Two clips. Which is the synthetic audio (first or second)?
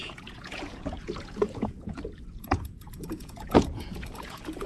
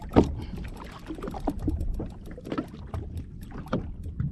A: first